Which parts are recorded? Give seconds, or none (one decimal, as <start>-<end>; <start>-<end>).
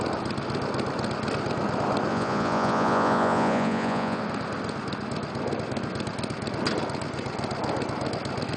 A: 0.0-2.1; 4.2-8.6